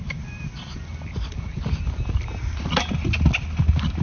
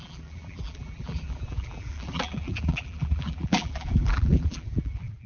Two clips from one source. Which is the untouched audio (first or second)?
first